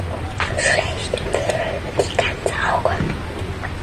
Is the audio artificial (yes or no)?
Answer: no